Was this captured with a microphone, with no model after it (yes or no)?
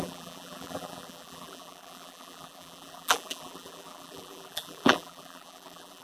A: no